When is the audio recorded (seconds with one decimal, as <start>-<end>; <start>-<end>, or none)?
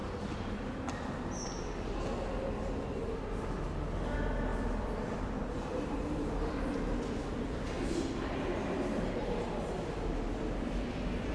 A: 1.0-4.5; 6.6-11.3